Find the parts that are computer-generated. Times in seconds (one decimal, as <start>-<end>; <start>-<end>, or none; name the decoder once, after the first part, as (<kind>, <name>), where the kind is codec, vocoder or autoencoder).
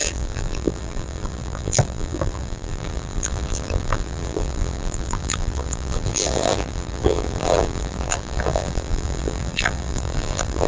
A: 0.0-10.7 (vocoder, BigVGAN v2)